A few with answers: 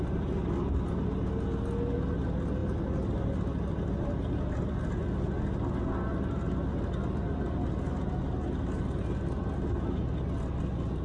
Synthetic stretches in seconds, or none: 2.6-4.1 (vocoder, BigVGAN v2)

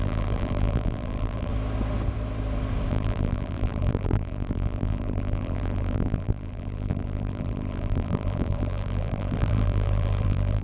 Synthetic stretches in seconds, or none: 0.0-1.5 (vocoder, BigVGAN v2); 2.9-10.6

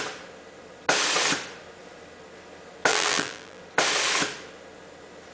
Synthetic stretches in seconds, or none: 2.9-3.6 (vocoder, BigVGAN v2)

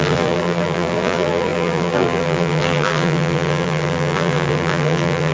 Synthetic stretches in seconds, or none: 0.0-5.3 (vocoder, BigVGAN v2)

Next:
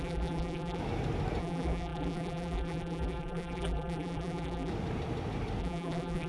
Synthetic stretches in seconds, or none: 0.0-0.8 (vocoder, BigVGAN v2); 1.4-4.7; 5.6-6.3

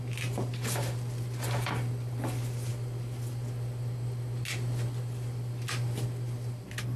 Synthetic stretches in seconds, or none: none